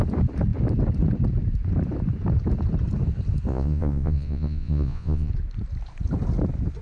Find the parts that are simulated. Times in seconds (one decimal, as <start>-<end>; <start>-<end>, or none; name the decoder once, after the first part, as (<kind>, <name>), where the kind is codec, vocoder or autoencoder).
3.5-5.3 (vocoder, Vocos)